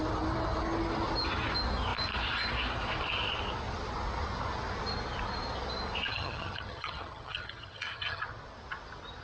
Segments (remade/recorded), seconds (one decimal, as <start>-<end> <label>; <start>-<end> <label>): 0.0-6.1 recorded; 6.1-8.2 remade; 8.2-9.2 recorded